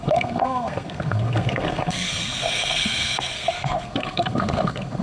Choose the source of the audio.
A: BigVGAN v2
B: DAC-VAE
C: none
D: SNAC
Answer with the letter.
D